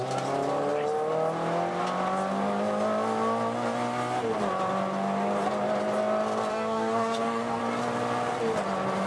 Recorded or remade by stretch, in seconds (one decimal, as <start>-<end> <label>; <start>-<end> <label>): 0.0-6.5 recorded; 6.5-7.6 remade; 7.6-9.1 recorded